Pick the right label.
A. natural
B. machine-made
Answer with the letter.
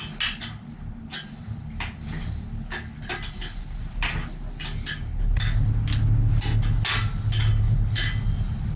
A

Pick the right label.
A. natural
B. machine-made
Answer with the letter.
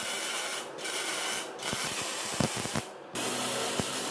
A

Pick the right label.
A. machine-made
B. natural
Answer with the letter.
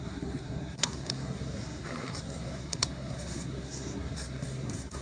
A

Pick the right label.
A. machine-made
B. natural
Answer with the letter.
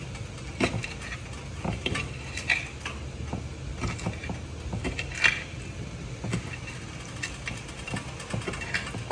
B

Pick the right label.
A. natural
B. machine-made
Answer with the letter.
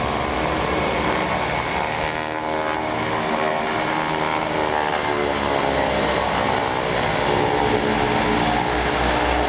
A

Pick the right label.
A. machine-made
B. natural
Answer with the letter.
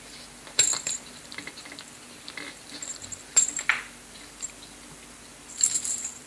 A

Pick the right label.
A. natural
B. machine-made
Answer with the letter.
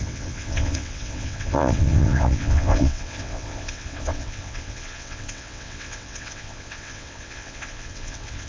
B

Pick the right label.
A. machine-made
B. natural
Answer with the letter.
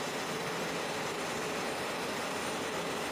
B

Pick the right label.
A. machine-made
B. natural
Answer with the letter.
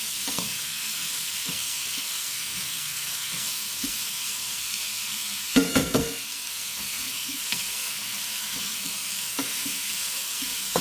A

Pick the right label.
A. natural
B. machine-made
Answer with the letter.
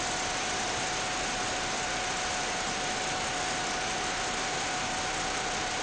A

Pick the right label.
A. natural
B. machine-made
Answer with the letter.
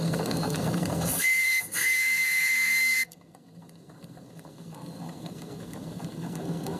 B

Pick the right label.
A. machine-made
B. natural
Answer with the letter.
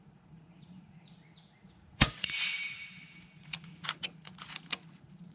A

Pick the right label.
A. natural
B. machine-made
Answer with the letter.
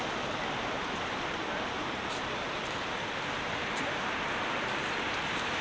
B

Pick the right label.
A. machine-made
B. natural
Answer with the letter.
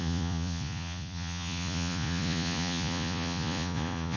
A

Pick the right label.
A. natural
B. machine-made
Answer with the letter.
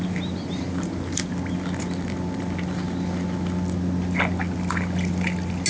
A